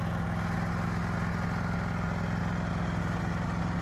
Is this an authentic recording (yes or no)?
yes